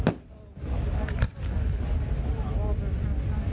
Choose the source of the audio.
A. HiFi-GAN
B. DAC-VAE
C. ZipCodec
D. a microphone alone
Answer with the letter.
D